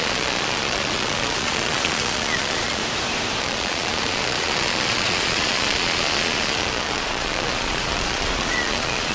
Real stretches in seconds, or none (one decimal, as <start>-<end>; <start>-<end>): 2.8-3.4